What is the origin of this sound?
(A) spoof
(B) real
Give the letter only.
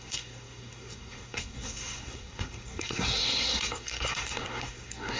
A